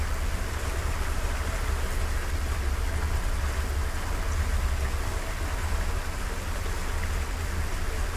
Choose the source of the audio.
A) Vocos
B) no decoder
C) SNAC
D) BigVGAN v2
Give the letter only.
B